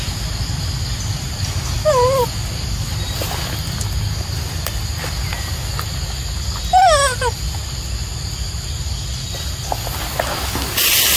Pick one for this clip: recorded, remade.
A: recorded